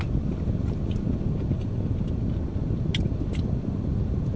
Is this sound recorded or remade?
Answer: recorded